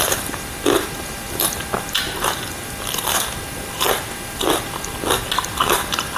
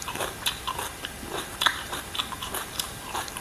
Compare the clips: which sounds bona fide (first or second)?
first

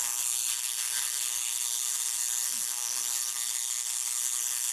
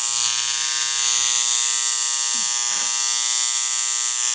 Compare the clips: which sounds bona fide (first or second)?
second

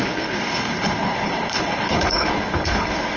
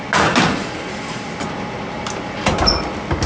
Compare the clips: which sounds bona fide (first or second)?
second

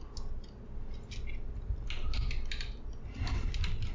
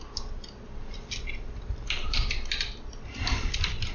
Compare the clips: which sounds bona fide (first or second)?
first